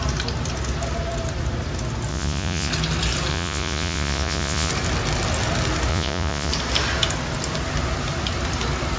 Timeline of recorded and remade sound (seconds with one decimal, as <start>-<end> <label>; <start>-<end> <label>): 0.0-2.1 recorded; 2.1-2.7 remade; 2.7-3.3 recorded; 3.3-4.7 remade; 4.7-5.9 recorded; 5.9-6.5 remade; 6.5-9.0 recorded